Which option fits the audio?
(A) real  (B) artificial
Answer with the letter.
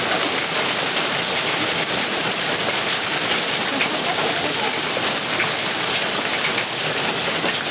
A